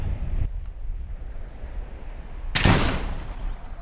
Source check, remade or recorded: recorded